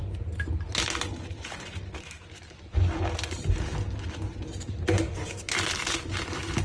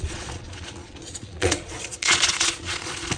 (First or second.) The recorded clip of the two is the first